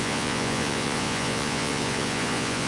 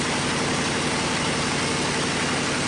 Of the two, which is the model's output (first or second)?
first